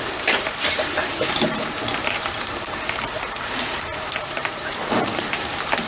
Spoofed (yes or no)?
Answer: yes